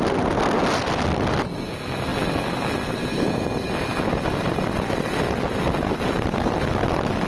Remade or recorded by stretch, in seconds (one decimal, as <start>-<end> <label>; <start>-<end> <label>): 0.0-7.3 recorded